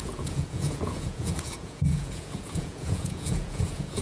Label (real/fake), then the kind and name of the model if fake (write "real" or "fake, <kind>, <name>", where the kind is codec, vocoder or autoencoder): fake, vocoder, Vocos